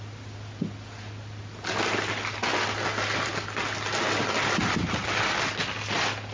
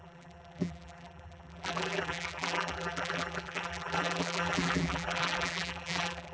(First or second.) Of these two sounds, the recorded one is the first